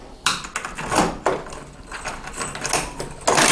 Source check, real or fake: real